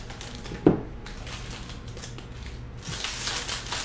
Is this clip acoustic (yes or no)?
yes